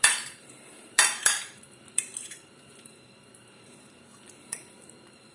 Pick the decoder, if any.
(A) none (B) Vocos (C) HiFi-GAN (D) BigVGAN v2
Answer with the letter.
D